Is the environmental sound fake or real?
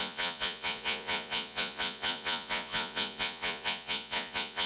fake